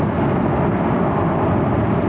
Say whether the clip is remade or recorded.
recorded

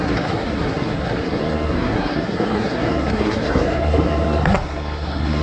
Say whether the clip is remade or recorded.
remade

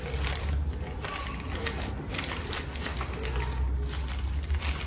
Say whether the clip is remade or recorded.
recorded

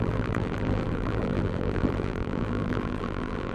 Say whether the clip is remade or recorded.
remade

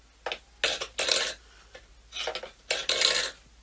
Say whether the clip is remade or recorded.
recorded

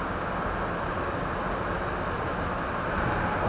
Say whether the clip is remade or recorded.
recorded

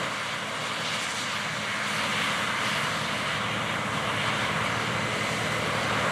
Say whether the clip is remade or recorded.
recorded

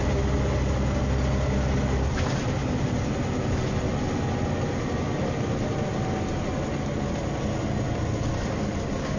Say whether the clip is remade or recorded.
recorded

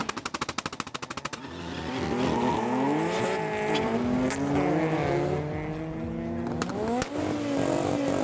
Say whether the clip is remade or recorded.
recorded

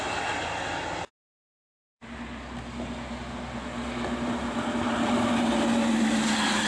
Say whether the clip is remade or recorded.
recorded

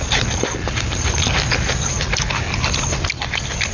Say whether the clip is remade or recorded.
recorded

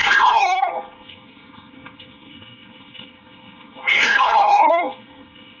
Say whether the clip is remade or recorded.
remade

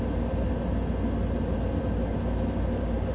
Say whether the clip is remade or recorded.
recorded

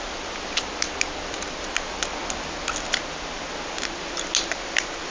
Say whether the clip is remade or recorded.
recorded